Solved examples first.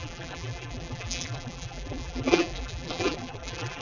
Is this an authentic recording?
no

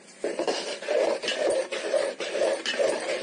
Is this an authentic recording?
no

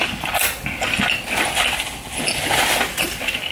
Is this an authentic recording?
yes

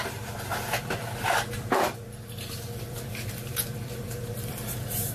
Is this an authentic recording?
no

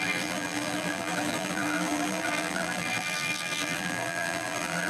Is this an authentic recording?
no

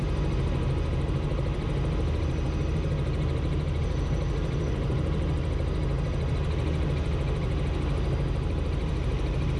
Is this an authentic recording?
yes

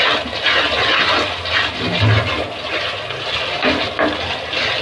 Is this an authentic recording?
yes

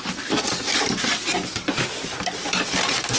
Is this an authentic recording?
yes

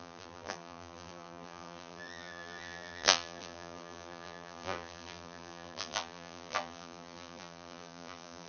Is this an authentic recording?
no